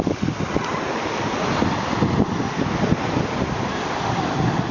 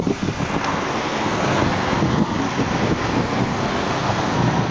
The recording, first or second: first